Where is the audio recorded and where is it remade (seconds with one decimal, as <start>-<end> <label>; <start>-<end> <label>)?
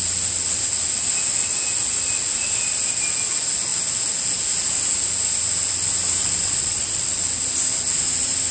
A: 0.0-6.2 recorded; 6.2-7.2 remade; 7.2-8.5 recorded